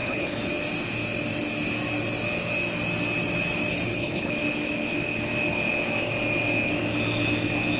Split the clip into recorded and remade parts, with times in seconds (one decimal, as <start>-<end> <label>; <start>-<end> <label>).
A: 0.0-0.5 remade; 0.5-3.7 recorded; 3.7-4.3 remade; 4.3-7.8 recorded